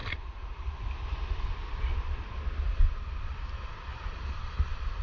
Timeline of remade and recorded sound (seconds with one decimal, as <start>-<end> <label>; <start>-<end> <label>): 0.0-5.0 remade